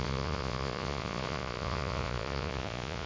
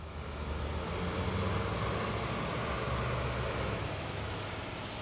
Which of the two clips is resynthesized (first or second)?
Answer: first